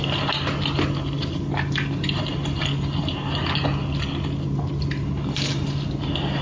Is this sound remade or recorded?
recorded